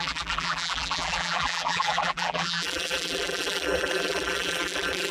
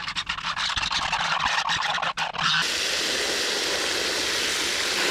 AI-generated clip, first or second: first